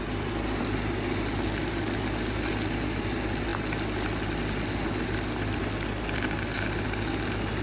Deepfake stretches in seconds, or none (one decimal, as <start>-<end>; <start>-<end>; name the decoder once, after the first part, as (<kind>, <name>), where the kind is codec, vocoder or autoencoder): none

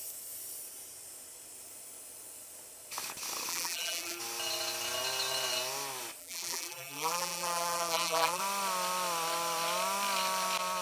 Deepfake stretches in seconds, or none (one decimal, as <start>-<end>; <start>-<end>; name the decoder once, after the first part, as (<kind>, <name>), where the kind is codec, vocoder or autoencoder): 3.5-4.2 (vocoder, BigVGAN v2); 6.2-8.4

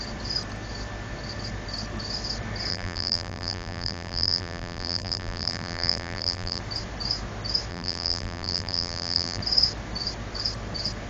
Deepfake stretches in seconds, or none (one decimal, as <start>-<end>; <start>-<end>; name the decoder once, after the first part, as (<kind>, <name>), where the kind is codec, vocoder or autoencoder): 2.7-6.6 (vocoder, BigVGAN v2); 7.7-9.4

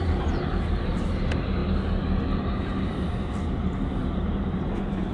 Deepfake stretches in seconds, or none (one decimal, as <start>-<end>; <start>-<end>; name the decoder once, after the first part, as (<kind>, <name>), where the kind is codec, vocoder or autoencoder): 0.0-1.6 (vocoder, BigVGAN v2); 2.5-5.1

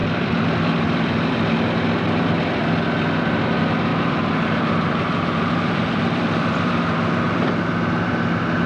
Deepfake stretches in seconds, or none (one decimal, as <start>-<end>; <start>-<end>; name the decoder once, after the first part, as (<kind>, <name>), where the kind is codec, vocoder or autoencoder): 0.0-1.4 (vocoder, BigVGAN v2); 3.9-7.6

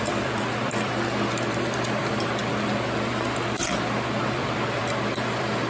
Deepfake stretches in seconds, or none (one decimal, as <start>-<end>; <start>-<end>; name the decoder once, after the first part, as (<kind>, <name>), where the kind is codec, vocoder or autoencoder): 0.0-2.4 (vocoder, BigVGAN v2); 4.2-5.7

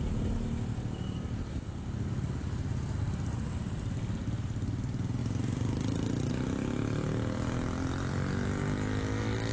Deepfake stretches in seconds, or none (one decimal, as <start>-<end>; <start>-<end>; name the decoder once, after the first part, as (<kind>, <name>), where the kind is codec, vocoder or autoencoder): 5.2-6.3 (vocoder, BigVGAN v2)

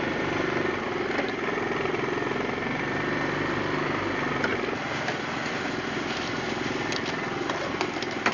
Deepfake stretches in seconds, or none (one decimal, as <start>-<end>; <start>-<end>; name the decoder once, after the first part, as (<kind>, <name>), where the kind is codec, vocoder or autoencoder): none